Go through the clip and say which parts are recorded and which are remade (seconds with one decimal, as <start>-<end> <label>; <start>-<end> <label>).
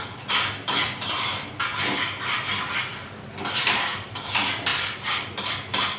0.0-1.3 remade; 1.3-3.7 recorded; 3.7-6.0 remade